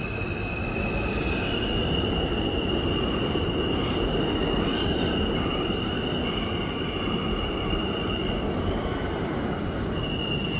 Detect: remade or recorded recorded